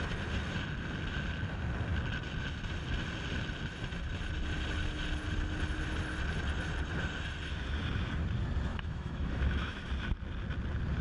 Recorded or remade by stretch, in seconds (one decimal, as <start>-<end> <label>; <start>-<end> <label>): 0.0-8.7 recorded; 8.7-9.9 remade; 9.9-11.0 recorded